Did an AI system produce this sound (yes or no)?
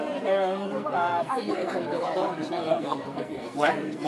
yes